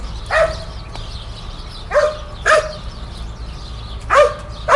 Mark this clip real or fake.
real